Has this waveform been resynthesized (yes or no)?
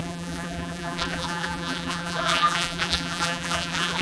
yes